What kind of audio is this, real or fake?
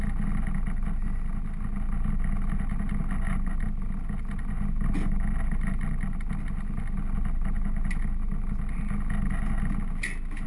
real